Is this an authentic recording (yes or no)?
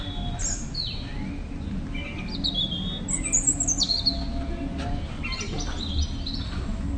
yes